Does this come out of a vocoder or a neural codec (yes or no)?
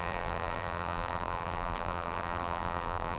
yes